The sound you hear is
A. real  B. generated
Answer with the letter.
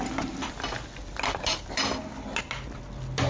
A